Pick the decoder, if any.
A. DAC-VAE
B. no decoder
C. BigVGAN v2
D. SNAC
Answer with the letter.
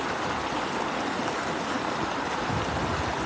B